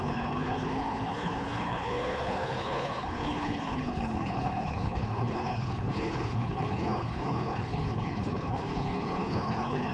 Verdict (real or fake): fake